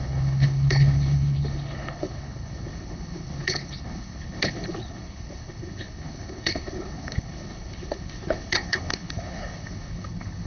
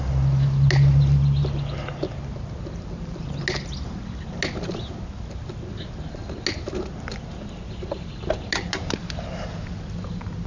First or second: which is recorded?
second